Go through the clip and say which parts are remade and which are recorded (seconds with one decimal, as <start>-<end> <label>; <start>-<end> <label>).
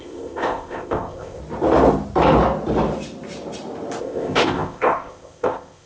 0.0-1.4 remade; 1.4-4.0 recorded; 4.0-5.9 remade